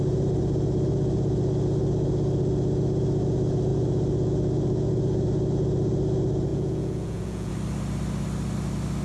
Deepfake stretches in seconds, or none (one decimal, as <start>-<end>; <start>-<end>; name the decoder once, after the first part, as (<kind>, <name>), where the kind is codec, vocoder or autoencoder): 6.5-7.5 (vocoder, Vocos)